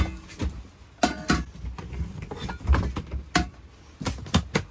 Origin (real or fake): real